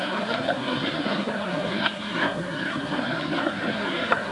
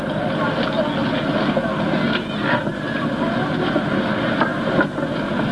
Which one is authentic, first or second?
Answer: second